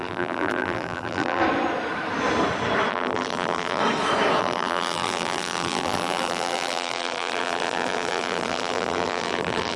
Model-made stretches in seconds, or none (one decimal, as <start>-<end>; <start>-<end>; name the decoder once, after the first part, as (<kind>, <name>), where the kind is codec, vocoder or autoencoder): 0.0-1.4 (vocoder, BigVGAN v2); 2.9-3.8; 4.4-9.8